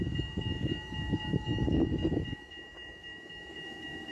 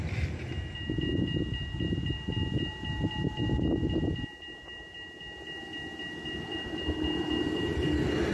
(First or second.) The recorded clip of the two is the second